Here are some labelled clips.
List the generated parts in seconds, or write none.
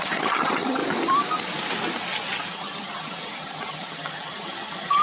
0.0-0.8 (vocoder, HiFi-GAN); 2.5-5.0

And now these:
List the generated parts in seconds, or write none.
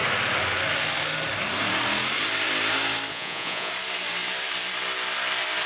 3.1-3.7 (vocoder, Vocos)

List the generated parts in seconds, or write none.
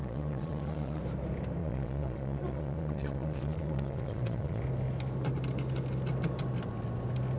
0.0-1.0 (vocoder, Vocos); 1.6-4.6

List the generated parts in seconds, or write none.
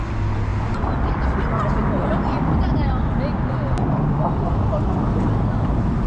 none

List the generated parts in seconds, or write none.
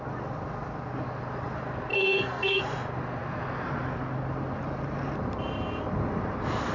1.9-2.6 (codec, SNAC)